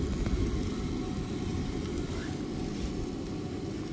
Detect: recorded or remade recorded